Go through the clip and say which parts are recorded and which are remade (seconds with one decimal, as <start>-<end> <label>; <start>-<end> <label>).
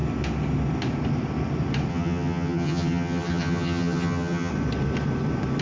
0.0-1.9 recorded; 1.9-4.5 remade; 4.5-5.6 recorded